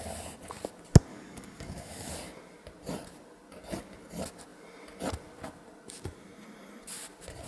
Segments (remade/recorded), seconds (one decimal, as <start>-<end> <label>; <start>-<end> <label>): 0.0-1.1 recorded; 1.1-2.1 remade; 2.1-7.5 recorded